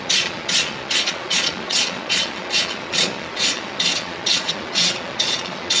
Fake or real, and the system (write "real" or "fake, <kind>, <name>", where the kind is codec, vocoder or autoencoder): fake, vocoder, Vocos